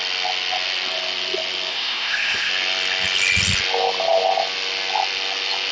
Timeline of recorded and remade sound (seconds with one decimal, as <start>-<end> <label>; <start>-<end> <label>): 0.0-1.7 recorded; 1.7-2.5 remade; 2.5-5.7 recorded

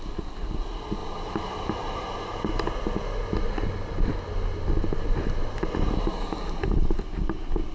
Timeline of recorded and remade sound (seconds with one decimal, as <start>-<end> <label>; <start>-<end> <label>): 0.0-1.0 recorded; 1.0-2.5 remade; 2.5-7.7 recorded